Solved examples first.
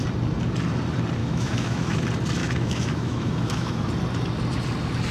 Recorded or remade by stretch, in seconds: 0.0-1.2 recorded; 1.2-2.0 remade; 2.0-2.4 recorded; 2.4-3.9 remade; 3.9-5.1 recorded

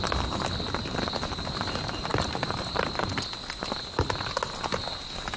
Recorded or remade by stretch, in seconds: 0.0-2.1 recorded; 2.1-2.8 remade; 2.8-5.4 recorded

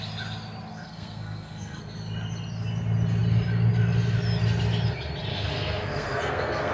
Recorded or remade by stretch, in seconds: 0.0-0.7 recorded; 0.7-1.8 remade; 1.8-5.3 recorded; 5.3-6.7 remade

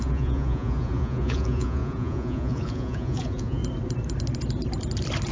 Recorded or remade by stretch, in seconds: 0.0-3.6 remade; 3.6-5.3 recorded

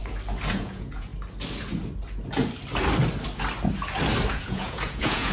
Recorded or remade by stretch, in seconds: 0.0-0.5 recorded; 0.5-1.1 remade; 1.1-4.3 recorded; 4.3-5.3 remade

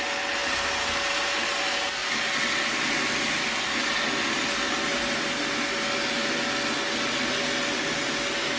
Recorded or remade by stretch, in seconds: 0.0-8.6 recorded

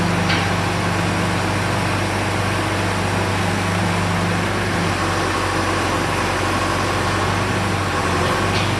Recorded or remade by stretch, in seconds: 0.0-3.3 recorded; 3.3-3.8 remade; 3.8-8.8 recorded